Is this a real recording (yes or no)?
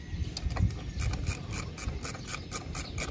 yes